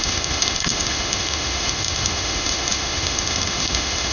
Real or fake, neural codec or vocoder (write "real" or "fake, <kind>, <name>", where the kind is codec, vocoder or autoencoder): fake, autoencoder, DAC-VAE